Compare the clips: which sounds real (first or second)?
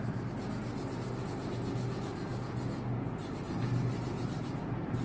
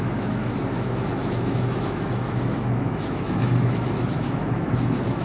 first